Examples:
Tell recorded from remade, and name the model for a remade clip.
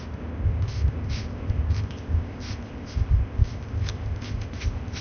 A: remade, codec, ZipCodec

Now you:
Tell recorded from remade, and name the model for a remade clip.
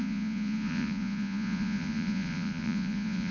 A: remade, vocoder, Vocos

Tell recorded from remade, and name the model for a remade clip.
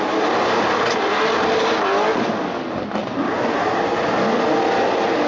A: recorded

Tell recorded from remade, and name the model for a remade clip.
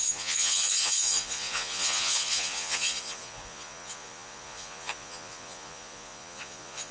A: remade, vocoder, Vocos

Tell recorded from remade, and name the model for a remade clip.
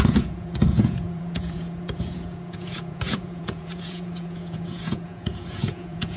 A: remade, vocoder, Vocos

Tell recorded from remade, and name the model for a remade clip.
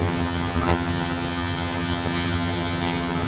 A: remade, vocoder, HiFi-GAN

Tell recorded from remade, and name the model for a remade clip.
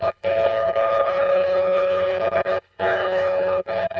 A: remade, codec, HILCodec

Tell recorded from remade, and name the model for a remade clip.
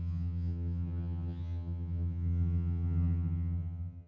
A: remade, vocoder, HiFi-GAN